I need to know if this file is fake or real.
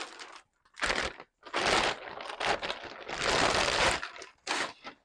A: real